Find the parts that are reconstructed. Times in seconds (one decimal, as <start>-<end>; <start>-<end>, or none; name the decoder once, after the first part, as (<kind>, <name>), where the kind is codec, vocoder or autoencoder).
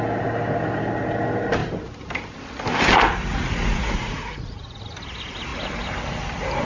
3.7-4.8 (vocoder, Vocos)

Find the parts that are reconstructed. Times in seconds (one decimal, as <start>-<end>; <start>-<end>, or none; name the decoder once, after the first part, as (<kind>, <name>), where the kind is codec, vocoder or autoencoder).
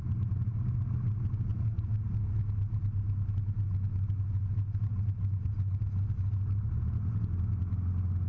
none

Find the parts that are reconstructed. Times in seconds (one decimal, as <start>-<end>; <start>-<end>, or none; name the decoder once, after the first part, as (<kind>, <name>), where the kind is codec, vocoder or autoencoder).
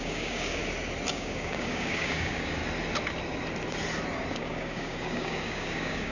0.0-0.6 (codec, DAC); 1.1-2.6; 4.3-6.1